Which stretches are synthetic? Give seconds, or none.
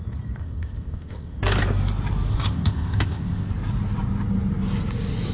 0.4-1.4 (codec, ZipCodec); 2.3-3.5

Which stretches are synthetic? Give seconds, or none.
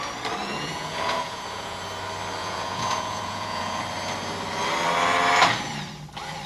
0.4-1.8 (vocoder, Vocos); 2.4-3.8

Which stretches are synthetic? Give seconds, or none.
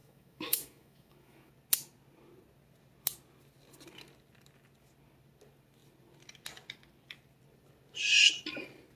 0.0-1.5 (autoencoder, DAC-VAE)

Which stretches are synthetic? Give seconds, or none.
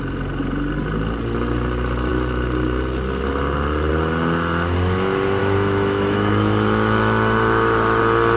5.4-8.0 (autoencoder, DAC-VAE)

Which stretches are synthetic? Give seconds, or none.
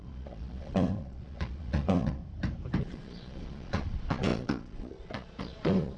0.0-2.2 (vocoder, Vocos); 2.8-6.0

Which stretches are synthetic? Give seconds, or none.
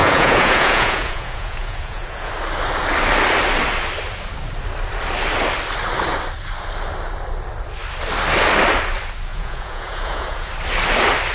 0.0-2.3 (vocoder, Vocos); 9.3-10.5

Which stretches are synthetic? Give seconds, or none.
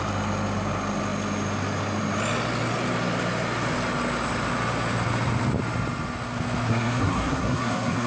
6.7-8.1 (codec, SNAC)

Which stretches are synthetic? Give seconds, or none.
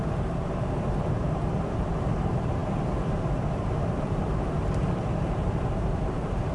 0.0-6.5 (vocoder, BigVGAN v2)